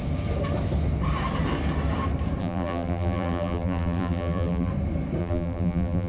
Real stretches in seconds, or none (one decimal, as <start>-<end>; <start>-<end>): 0.0-2.4; 4.7-5.2